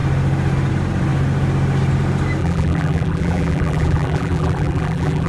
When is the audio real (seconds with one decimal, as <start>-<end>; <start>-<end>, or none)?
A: 0.0-2.4